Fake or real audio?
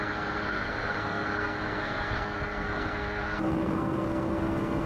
fake